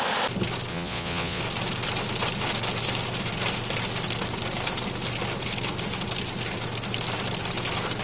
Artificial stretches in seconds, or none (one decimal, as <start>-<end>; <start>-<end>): 0.7-1.4